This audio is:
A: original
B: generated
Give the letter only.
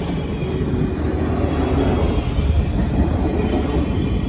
A